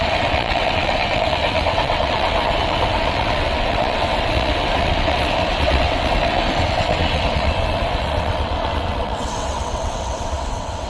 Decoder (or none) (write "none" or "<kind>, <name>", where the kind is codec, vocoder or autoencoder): vocoder, WaveNeXt